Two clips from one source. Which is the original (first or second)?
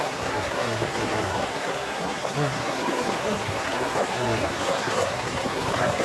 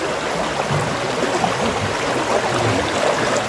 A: second